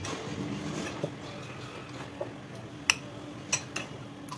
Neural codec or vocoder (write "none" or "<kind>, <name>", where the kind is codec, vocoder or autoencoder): none